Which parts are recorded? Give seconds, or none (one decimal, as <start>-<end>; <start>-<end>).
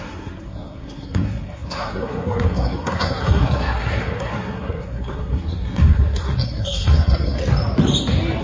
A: 7.4-8.4